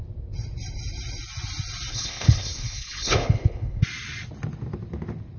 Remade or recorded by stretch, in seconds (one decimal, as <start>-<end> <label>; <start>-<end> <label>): 0.0-1.9 recorded; 1.9-3.8 remade; 3.8-5.4 recorded